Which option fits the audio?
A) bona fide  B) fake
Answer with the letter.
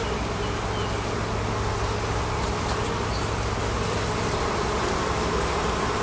A